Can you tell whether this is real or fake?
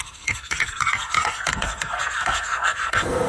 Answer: fake